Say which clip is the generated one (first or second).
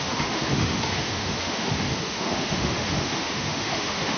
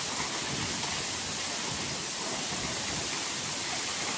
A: first